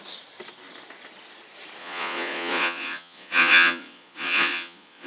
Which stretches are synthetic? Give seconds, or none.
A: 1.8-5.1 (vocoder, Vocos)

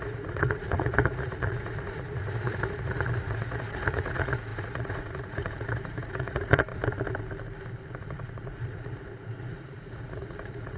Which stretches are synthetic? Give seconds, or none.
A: 0.0-6.7 (vocoder, Vocos); 8.0-10.8

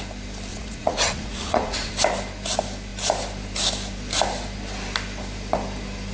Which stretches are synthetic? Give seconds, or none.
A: 0.5-1.9 (vocoder, Vocos)

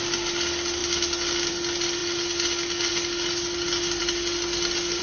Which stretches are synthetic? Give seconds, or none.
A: none

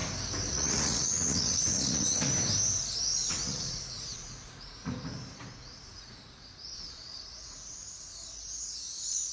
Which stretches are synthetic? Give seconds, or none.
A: 0.5-2.3 (vocoder, Vocos); 3.3-4.8; 5.5-9.3

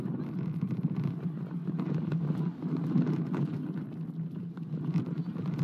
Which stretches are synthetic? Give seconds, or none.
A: none